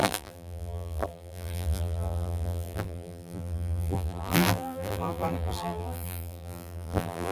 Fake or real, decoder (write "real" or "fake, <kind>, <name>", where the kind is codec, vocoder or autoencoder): fake, vocoder, BigVGAN v2